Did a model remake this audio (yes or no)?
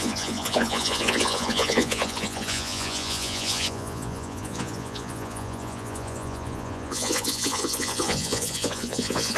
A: yes